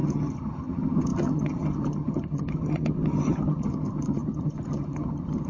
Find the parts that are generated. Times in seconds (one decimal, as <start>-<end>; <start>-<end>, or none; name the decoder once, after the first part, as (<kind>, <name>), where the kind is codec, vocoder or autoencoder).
0.0-5.5 (vocoder, HiFi-GAN)